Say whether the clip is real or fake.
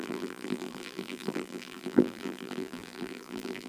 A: fake